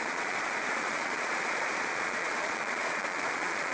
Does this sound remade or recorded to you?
remade